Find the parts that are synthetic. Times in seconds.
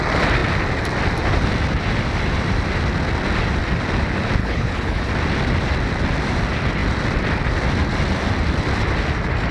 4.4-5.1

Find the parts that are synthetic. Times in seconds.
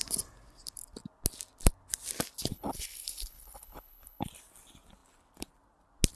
2.5-4.3